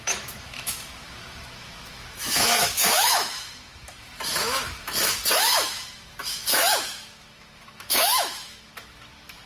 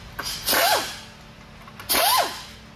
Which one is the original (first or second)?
second